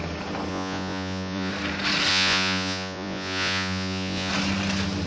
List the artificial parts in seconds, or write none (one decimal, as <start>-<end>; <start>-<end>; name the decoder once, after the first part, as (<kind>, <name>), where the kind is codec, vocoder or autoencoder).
0.5-1.5 (vocoder, Vocos); 2.1-4.3

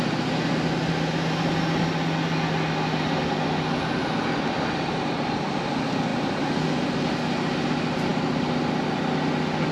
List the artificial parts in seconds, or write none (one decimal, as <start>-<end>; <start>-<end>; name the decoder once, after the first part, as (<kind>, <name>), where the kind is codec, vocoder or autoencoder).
none

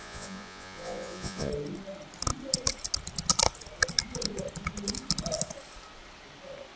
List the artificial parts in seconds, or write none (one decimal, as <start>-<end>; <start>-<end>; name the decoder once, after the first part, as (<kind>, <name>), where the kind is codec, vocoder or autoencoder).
0.0-1.5 (vocoder, Vocos)

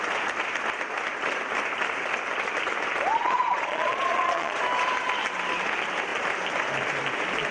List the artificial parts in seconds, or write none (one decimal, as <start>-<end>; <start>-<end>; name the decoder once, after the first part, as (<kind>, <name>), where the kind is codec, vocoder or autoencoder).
3.1-4.6 (vocoder, Vocos)

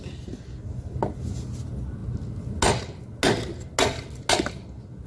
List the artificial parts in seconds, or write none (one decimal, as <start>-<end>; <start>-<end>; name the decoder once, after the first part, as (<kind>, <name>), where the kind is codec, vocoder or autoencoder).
none

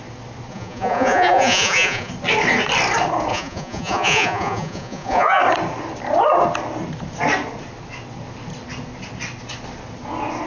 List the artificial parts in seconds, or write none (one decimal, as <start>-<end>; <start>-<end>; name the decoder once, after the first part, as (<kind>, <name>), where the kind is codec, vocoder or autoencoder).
0.5-2.1 (vocoder, Vocos); 3.3-5.4

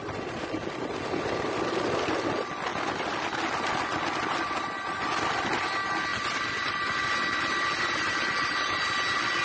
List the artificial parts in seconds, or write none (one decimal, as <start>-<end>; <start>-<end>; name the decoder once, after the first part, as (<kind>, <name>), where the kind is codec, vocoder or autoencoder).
none